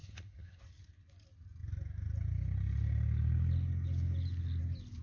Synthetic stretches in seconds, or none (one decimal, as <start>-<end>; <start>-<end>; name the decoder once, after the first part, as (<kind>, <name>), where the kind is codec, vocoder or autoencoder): 0.0-0.6 (codec, SNAC)